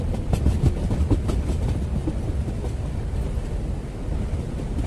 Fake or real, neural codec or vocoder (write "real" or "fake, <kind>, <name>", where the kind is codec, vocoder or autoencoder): real